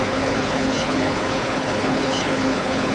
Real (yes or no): no